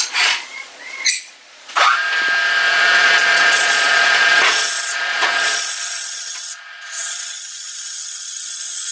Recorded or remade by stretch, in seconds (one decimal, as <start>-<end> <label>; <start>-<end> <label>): 0.0-2.0 remade; 2.0-2.7 recorded; 2.7-8.9 remade